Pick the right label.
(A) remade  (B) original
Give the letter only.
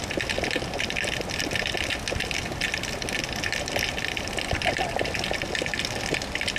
B